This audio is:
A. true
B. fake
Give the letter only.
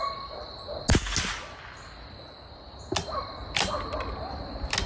A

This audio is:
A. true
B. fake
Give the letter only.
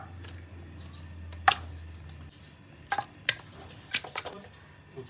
A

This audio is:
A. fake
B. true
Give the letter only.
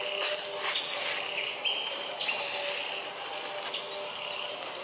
B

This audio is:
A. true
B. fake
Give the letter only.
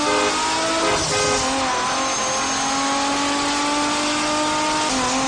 A